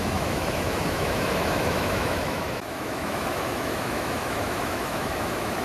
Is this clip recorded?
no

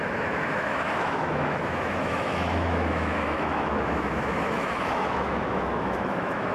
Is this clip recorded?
no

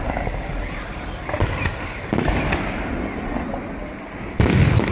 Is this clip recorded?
yes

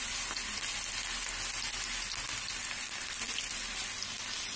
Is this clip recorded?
yes